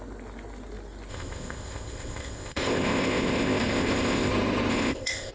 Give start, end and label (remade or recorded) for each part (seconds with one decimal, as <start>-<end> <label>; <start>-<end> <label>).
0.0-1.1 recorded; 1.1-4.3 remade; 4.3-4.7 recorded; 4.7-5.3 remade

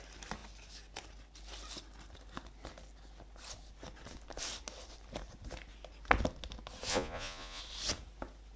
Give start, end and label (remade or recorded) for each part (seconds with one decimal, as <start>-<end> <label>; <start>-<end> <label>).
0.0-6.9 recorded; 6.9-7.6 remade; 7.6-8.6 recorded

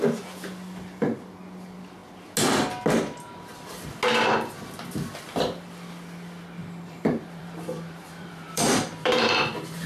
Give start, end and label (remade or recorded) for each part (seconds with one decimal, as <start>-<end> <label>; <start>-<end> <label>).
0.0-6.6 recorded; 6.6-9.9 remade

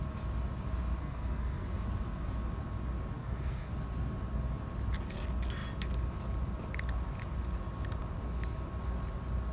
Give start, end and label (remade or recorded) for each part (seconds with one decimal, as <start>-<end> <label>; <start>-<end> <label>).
0.0-1.0 recorded; 1.0-1.8 remade; 1.8-3.2 recorded; 3.2-3.7 remade; 3.7-9.5 recorded

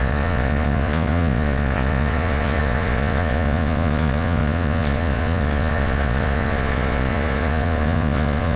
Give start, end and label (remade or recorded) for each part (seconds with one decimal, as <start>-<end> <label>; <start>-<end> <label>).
0.0-8.6 remade

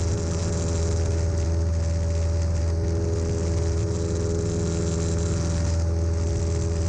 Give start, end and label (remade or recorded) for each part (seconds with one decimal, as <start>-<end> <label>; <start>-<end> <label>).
0.0-6.9 recorded

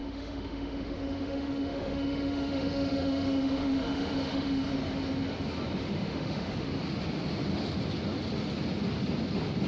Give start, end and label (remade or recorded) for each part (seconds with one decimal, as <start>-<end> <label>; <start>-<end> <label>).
0.0-4.7 remade; 4.7-5.8 recorded; 5.8-6.7 remade; 6.7-9.7 recorded